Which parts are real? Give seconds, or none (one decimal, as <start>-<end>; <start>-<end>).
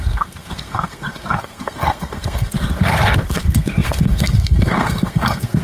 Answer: none